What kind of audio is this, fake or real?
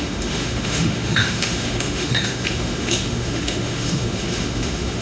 fake